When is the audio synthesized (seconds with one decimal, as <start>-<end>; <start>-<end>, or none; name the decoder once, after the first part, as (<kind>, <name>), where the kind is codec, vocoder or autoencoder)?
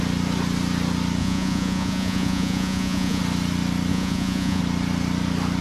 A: 1.2-3.2 (vocoder, Vocos); 3.9-4.6